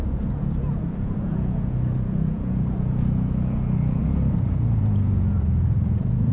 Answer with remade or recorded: remade